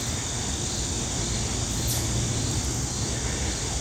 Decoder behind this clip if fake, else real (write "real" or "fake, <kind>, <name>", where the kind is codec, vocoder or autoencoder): real